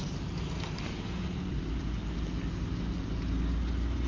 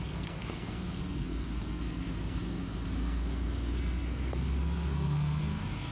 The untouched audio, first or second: first